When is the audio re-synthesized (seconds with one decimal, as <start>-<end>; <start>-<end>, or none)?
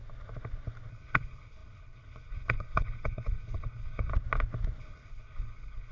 0.9-4.1; 4.8-5.9